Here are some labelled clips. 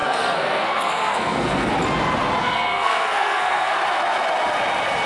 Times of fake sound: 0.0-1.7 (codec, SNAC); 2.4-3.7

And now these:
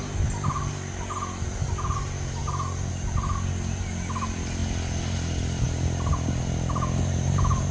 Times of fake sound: none

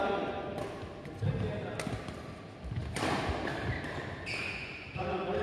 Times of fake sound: 4.4-4.9 (vocoder, Vocos)